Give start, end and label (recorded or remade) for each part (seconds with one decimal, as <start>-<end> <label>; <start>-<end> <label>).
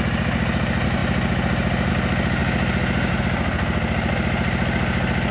0.0-5.3 recorded